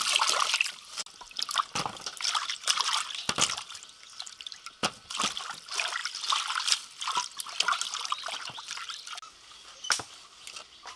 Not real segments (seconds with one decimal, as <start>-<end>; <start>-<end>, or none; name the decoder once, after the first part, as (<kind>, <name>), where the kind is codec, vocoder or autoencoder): none